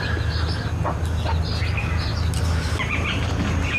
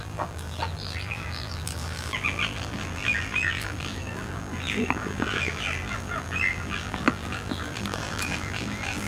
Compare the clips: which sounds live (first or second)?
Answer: first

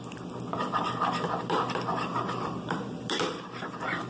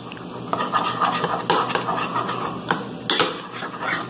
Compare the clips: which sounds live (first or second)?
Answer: second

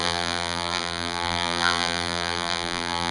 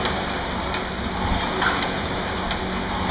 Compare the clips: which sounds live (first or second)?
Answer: second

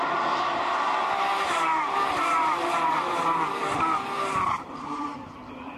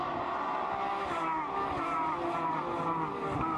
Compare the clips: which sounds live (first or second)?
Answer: second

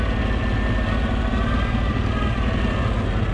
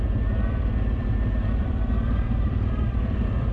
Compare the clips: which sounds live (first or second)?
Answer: first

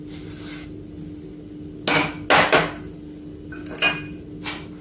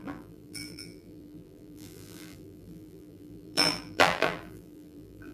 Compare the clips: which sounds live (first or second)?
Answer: first